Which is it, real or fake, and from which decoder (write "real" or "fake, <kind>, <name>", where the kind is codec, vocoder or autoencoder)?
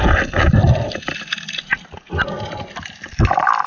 real